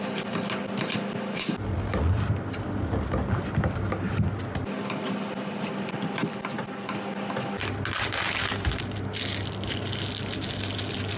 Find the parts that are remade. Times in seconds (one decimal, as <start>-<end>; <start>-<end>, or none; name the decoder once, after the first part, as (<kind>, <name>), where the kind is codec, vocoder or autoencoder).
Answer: none